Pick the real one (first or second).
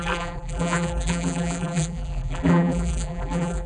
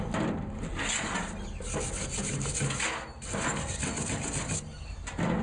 second